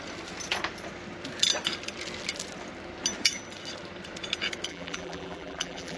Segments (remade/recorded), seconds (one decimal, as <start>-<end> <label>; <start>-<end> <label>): 0.0-4.7 recorded; 4.7-6.0 remade